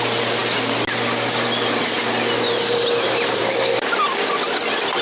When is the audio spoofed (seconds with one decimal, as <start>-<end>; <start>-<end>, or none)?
none